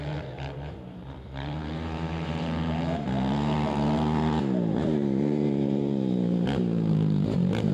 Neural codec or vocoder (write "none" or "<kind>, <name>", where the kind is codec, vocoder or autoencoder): vocoder, BigVGAN v2